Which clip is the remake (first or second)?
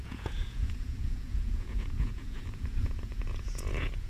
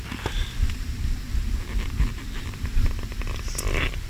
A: first